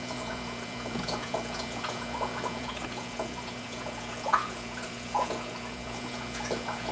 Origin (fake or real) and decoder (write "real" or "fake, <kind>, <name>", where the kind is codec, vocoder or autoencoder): fake, vocoder, Vocos